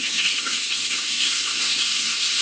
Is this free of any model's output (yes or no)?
no